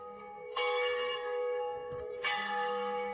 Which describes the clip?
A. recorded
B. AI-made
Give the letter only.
B